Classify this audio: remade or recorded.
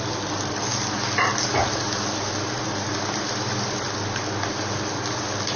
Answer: recorded